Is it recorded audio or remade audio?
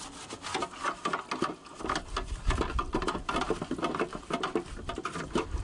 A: recorded